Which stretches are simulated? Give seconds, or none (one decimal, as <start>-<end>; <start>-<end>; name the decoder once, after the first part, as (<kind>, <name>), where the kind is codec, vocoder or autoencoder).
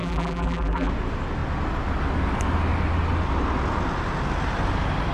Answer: 0.0-0.9 (vocoder, BigVGAN v2)